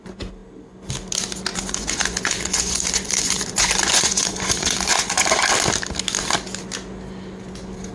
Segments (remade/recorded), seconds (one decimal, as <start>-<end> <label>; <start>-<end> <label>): 0.0-1.5 recorded; 1.5-5.5 remade; 5.5-7.9 recorded